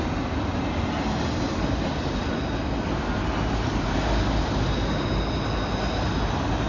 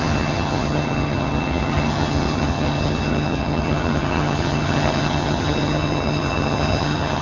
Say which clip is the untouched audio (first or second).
first